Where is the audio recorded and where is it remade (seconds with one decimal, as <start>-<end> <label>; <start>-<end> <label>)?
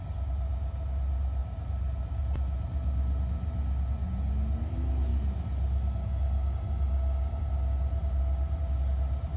0.0-9.4 recorded